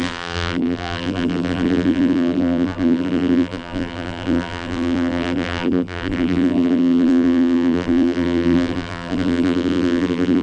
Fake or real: fake